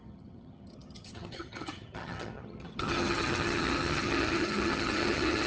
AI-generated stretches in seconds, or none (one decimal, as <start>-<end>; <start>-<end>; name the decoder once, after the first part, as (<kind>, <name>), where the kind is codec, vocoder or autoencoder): 0.0-5.5 (vocoder, HiFi-GAN)